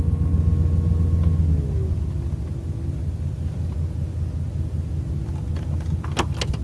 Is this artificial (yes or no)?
no